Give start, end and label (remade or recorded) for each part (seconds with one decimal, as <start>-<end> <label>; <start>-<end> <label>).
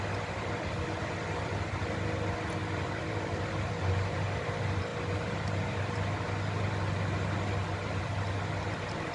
0.0-2.6 recorded; 2.6-3.5 remade; 3.5-9.1 recorded